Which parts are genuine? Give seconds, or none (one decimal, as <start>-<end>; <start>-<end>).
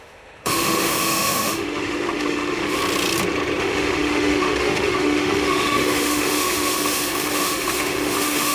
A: 2.8-3.6